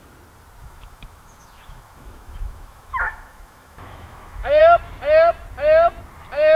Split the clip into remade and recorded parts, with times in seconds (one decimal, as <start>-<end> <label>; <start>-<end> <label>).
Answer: 0.0-0.6 recorded; 0.6-4.6 remade; 4.6-6.6 recorded

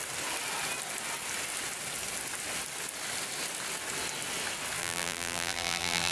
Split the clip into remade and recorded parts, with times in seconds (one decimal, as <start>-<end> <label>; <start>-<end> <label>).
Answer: 0.0-4.8 recorded; 4.8-6.1 remade

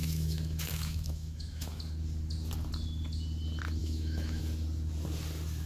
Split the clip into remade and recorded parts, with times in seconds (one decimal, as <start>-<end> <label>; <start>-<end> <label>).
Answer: 0.0-1.8 remade; 1.8-3.8 recorded; 3.8-4.4 remade; 4.4-5.7 recorded

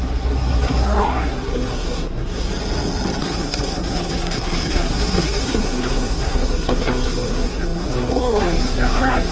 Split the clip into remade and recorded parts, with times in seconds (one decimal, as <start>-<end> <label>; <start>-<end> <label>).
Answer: 0.0-2.5 remade; 2.5-3.2 recorded; 3.2-9.3 remade

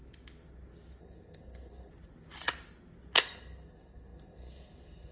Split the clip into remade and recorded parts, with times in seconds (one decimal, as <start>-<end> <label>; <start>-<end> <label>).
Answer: 0.0-1.0 recorded; 1.0-1.9 remade; 1.9-3.2 recorded; 3.2-5.1 remade